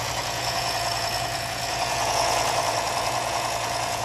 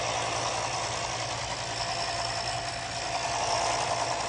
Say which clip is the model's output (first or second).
first